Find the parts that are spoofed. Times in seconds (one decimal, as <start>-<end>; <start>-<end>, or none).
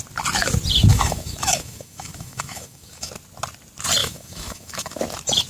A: 0.9-3.1; 4.0-5.0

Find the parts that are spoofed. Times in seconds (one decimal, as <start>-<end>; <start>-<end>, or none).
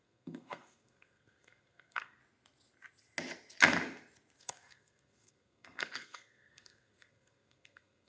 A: 0.0-2.2; 4.4-8.1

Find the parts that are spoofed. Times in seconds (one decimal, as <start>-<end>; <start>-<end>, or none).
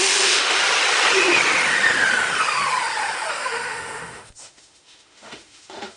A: 0.0-0.6; 3.3-6.0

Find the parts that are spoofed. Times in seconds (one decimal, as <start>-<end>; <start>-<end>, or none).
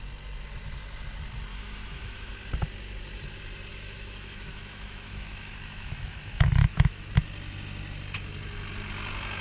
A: 1.5-2.3; 3.7-7.1